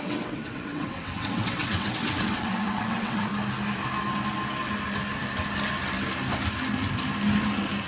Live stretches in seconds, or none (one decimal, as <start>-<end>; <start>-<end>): 3.3-7.9